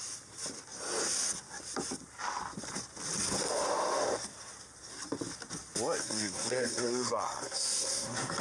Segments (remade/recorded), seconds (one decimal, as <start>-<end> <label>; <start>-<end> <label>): 0.0-6.0 recorded; 6.0-8.4 remade